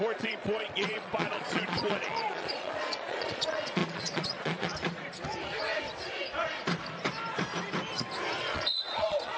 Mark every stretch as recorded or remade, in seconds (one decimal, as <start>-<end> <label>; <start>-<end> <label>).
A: 0.0-4.7 remade; 4.7-8.4 recorded; 8.4-9.4 remade